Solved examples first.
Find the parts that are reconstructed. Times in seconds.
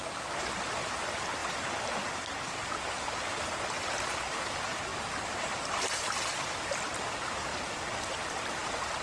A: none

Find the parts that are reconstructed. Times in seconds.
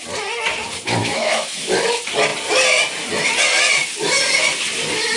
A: 1.0-1.7 (autoencoder, DAC-VAE)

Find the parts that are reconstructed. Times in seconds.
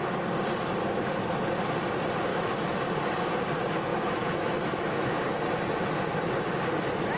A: 2.3-2.9 (autoencoder, DAC-VAE); 3.9-5.2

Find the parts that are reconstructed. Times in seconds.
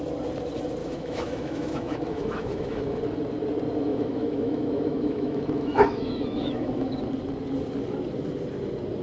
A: 0.8-3.0 (autoencoder, DAC-VAE); 3.9-7.0